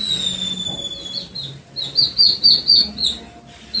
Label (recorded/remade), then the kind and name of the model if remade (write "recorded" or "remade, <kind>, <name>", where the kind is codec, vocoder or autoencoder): recorded